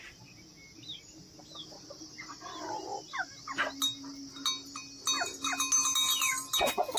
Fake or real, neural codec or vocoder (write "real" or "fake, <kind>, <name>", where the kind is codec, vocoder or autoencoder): real